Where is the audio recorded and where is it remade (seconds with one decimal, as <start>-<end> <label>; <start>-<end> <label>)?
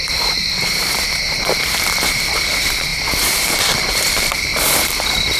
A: 0.0-4.5 remade; 4.5-5.4 recorded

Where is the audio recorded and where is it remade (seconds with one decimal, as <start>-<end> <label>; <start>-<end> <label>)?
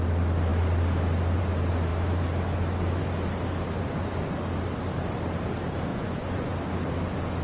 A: 0.0-5.9 recorded; 5.9-6.5 remade; 6.5-7.4 recorded